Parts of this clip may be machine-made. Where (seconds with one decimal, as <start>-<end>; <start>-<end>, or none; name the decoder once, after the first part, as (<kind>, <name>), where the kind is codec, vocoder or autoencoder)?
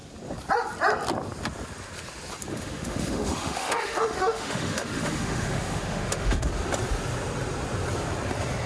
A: 2.5-6.5 (autoencoder, DAC-VAE)